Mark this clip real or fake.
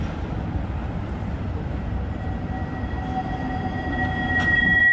real